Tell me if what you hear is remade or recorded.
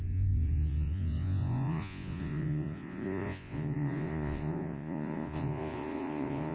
remade